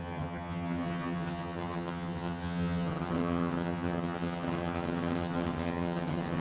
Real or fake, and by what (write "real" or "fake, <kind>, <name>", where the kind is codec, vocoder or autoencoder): fake, vocoder, HiFi-GAN